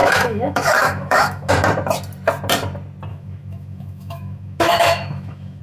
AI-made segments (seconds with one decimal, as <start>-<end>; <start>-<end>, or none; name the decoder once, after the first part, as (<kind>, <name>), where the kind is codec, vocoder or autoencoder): 0.0-1.5 (autoencoder, DAC-VAE); 3.1-5.6